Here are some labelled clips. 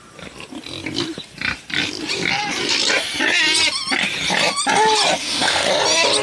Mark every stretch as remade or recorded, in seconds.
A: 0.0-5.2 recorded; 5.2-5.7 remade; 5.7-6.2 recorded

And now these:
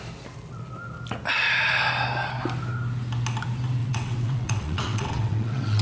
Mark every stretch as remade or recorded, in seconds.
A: 0.0-3.8 recorded; 3.8-5.8 remade

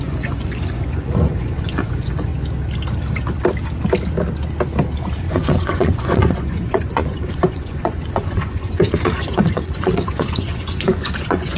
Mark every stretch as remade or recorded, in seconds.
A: 0.0-2.3 remade; 2.3-5.2 recorded; 5.2-11.6 remade

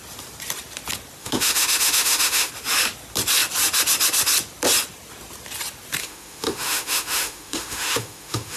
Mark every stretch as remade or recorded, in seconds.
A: 0.0-1.2 recorded; 1.2-2.5 remade; 2.5-6.0 recorded; 6.0-8.6 remade

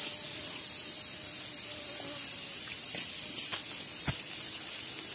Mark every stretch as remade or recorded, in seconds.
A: 0.0-5.1 recorded